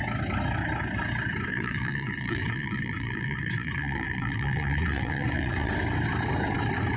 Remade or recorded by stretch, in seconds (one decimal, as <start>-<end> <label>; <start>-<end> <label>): 0.0-1.5 recorded; 1.5-5.7 remade; 5.7-7.0 recorded